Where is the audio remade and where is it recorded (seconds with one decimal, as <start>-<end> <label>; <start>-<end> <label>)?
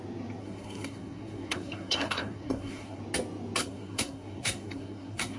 0.0-0.4 recorded; 0.4-3.0 remade; 3.0-3.6 recorded; 3.6-5.4 remade